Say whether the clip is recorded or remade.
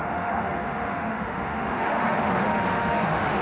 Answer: remade